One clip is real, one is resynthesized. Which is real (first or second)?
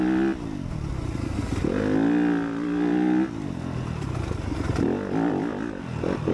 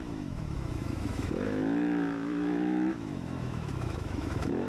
first